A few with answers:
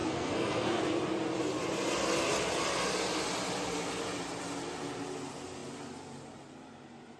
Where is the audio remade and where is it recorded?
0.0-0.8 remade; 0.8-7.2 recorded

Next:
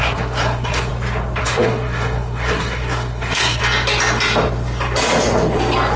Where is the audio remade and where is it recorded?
0.0-0.9 remade; 0.9-1.4 recorded; 1.4-3.6 remade; 3.6-6.0 recorded

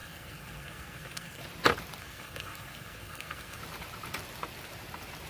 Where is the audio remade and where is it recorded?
0.0-1.4 remade; 1.4-2.0 recorded; 2.0-3.6 remade; 3.6-5.3 recorded

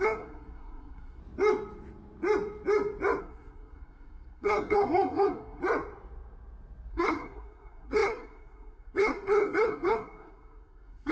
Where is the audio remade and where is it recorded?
0.0-1.2 remade; 1.2-3.2 recorded; 3.2-5.6 remade; 5.6-6.9 recorded; 6.9-11.1 remade

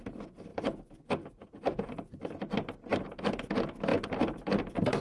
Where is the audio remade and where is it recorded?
0.0-5.0 recorded

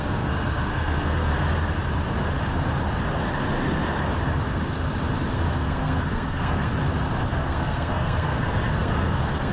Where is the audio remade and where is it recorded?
0.0-1.3 remade; 1.3-5.3 recorded; 5.3-6.7 remade; 6.7-7.3 recorded; 7.3-9.5 remade

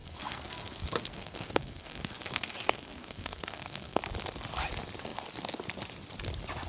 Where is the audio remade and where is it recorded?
0.0-4.0 remade; 4.0-6.7 recorded

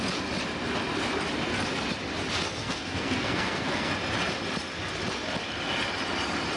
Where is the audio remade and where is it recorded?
0.0-2.6 recorded; 2.6-3.9 remade; 3.9-6.6 recorded